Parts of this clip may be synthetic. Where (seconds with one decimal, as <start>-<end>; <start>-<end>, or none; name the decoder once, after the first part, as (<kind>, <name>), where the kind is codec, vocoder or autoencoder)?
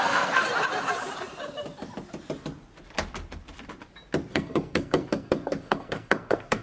0.0-0.4 (codec, SNAC); 4.3-6.6